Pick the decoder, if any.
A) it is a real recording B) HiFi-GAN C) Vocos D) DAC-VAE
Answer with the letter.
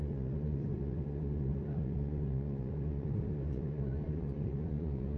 C